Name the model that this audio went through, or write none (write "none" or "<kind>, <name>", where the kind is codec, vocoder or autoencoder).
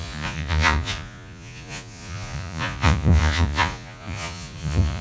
vocoder, Vocos